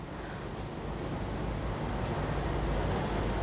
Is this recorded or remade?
recorded